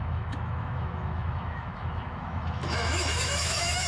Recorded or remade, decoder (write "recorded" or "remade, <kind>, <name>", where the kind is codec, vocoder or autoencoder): remade, autoencoder, DAC-VAE